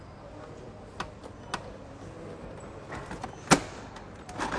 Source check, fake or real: real